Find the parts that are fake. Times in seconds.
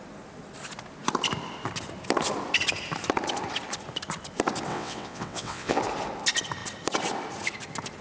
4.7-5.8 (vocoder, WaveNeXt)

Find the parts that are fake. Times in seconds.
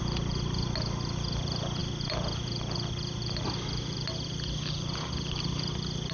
none